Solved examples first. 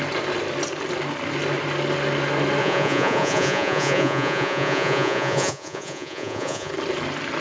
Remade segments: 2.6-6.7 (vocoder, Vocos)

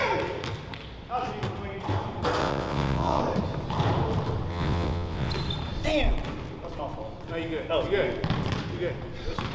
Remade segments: 2.4-3.2 (vocoder, WaveNeXt); 4.5-5.3

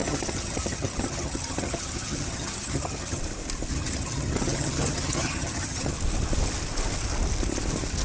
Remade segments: 0.0-3.2 (vocoder, HiFi-GAN); 3.7-5.9

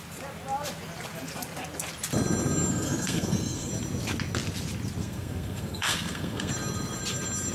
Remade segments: 2.7-3.7 (codec, SNAC); 5.0-6.5

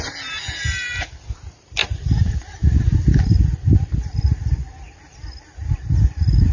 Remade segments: none

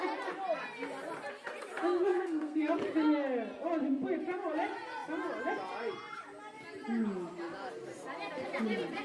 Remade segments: 2.1-2.6 (codec, SNAC)

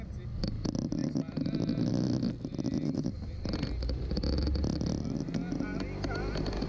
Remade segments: none